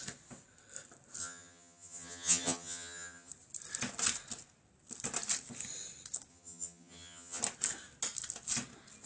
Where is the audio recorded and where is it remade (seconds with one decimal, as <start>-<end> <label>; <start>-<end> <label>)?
0.0-1.2 recorded; 1.2-3.3 remade; 3.3-6.3 recorded; 6.3-7.4 remade; 7.4-9.1 recorded